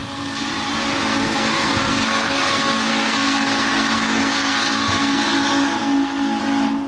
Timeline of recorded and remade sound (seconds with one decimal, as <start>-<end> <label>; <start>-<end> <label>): 0.0-0.5 remade; 0.5-1.1 recorded; 1.1-5.2 remade; 5.2-5.8 recorded; 5.8-6.4 remade; 6.4-6.9 recorded